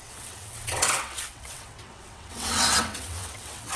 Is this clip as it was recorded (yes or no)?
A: no